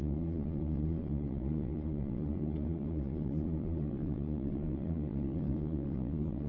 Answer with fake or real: fake